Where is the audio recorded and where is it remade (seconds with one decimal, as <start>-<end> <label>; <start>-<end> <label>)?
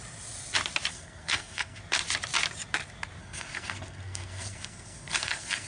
0.0-0.9 recorded; 0.9-1.8 remade; 1.8-3.2 recorded; 3.2-5.7 remade